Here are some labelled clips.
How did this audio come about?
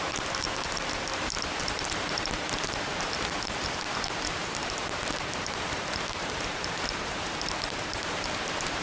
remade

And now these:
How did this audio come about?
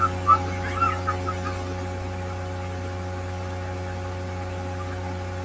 recorded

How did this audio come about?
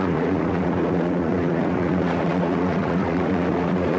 remade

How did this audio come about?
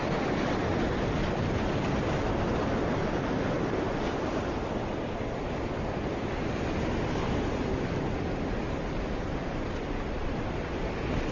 recorded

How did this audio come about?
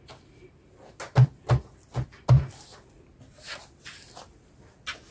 recorded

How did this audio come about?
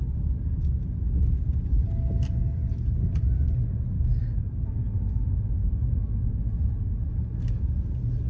recorded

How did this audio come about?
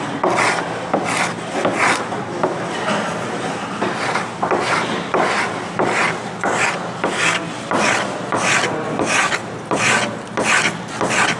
recorded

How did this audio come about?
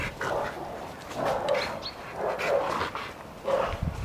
recorded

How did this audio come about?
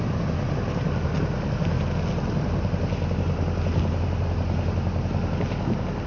recorded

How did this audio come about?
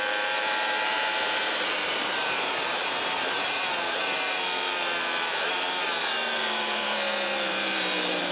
remade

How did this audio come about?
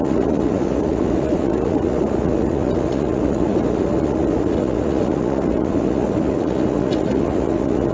remade